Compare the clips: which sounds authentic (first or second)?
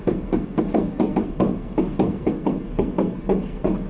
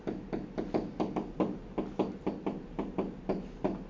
second